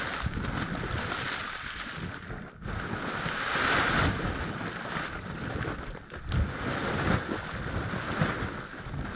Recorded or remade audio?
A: recorded